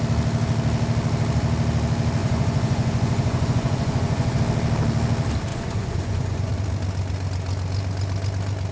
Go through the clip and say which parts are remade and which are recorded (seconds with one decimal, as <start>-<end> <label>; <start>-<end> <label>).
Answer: 0.0-2.2 recorded; 2.2-4.4 remade; 4.4-5.5 recorded; 5.5-6.5 remade; 6.5-8.7 recorded